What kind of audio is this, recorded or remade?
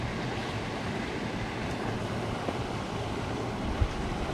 recorded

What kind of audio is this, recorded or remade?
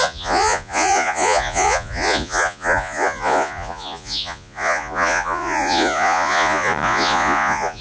remade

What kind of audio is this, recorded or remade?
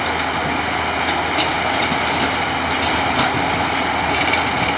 recorded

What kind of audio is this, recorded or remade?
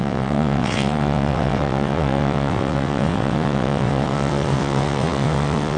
remade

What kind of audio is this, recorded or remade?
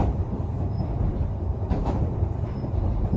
remade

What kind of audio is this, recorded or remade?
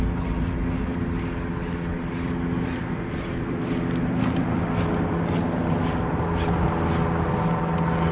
recorded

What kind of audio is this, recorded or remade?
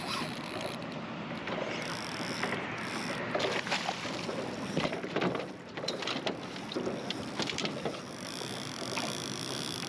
remade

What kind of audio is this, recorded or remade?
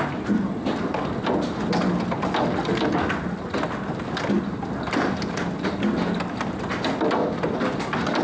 recorded